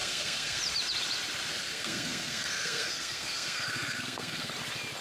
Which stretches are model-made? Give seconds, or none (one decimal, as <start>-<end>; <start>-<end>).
0.0-0.6; 1.5-4.5

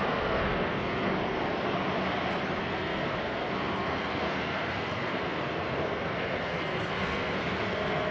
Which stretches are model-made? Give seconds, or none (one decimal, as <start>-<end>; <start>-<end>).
0.0-1.1; 2.6-8.1

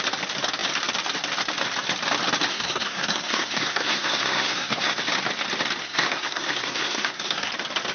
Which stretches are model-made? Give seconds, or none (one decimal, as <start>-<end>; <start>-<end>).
2.5-5.0; 5.8-7.5

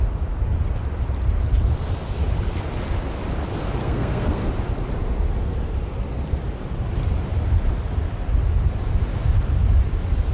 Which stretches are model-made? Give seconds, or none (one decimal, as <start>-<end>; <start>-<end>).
3.8-4.5